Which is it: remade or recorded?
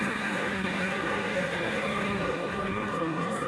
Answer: remade